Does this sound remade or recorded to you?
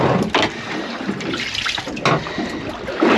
recorded